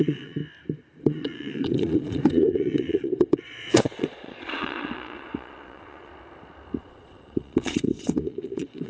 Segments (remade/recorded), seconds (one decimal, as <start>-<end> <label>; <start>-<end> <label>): 0.0-0.4 remade; 0.4-1.0 recorded; 1.0-6.1 remade; 6.1-6.8 recorded; 6.8-8.9 remade